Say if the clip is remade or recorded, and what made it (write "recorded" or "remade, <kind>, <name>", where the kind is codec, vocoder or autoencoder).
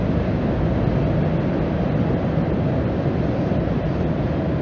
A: recorded